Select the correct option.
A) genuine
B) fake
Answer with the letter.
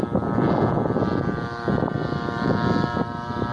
A